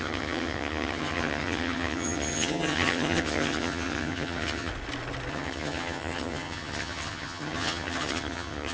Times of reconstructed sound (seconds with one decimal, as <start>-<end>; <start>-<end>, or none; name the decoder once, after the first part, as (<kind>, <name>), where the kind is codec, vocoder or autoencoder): 0.0-4.7 (vocoder, HiFi-GAN); 5.3-8.7